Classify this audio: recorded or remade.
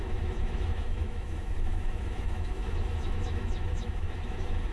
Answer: remade